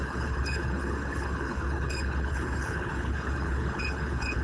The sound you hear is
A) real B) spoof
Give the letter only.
B